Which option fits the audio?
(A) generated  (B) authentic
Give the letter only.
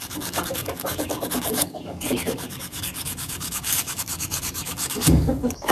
A